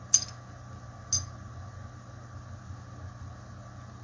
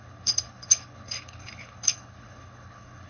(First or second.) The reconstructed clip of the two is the second